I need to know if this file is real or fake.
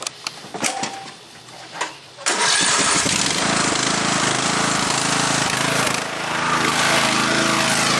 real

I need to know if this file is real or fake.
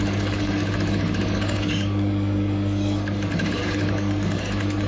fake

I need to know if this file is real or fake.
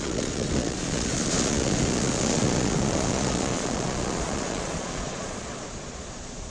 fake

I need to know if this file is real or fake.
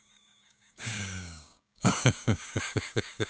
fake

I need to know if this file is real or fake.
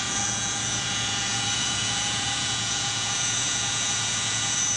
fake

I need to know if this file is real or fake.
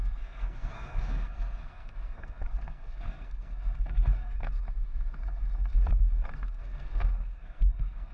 fake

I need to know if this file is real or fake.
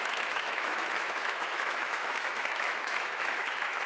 fake